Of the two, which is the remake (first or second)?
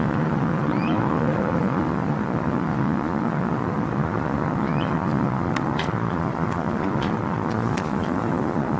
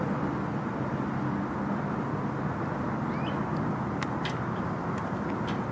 first